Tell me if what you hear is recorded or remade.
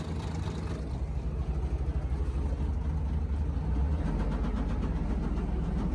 recorded